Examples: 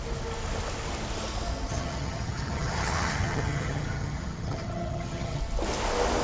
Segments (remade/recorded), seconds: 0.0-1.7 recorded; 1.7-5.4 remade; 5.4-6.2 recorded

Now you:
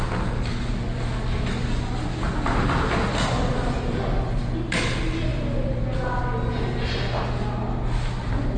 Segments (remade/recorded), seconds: 0.0-8.6 recorded